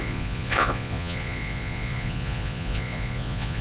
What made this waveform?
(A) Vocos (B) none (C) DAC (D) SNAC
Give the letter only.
A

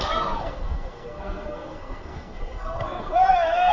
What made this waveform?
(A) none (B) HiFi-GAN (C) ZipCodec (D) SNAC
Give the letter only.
D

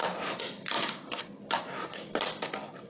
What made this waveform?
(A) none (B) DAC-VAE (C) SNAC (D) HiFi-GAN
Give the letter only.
A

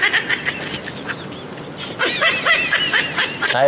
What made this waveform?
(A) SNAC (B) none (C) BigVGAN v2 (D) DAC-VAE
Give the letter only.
B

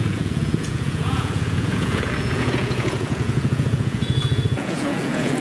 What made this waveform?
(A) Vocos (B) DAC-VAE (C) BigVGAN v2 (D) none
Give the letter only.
A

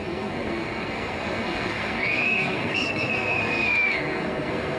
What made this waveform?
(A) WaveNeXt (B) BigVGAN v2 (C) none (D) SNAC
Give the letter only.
D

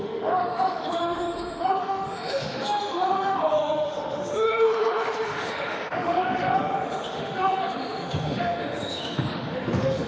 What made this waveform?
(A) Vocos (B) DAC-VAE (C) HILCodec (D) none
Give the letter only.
B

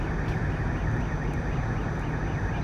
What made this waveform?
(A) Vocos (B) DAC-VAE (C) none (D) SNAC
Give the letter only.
C